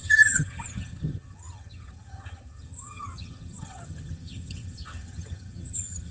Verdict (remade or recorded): remade